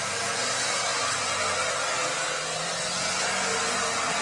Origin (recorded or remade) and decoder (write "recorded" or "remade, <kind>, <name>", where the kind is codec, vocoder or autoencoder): recorded